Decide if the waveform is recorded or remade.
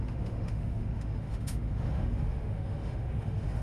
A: remade